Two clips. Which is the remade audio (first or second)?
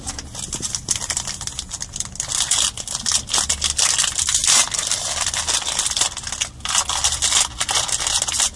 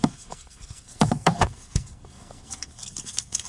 second